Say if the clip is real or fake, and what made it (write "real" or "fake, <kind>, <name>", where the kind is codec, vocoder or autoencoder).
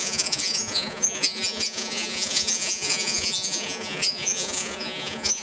fake, vocoder, Vocos